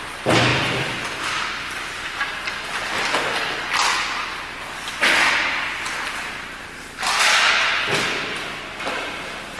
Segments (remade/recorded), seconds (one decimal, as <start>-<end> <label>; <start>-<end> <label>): 0.0-0.5 recorded; 0.5-1.2 remade; 1.2-9.6 recorded